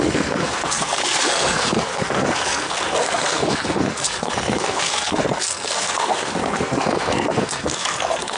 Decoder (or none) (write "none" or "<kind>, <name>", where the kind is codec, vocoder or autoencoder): codec, SNAC